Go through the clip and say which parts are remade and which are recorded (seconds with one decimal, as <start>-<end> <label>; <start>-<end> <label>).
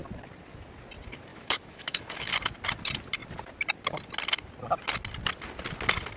0.0-1.3 recorded; 1.3-2.3 remade; 2.3-6.2 recorded